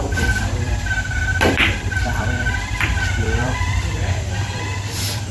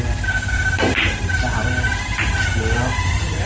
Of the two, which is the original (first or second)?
second